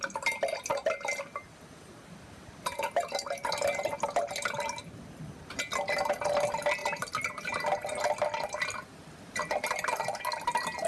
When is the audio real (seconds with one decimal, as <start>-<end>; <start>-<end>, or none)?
0.0-6.8; 7.5-10.9